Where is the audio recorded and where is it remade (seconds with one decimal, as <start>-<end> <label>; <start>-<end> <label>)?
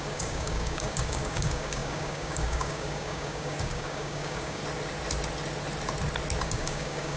0.0-4.6 remade; 4.6-6.4 recorded; 6.4-7.2 remade